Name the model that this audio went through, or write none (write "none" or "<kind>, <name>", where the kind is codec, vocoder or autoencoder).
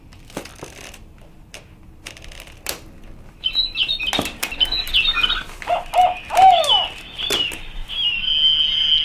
none